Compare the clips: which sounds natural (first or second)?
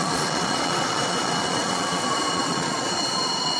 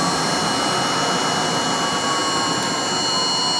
second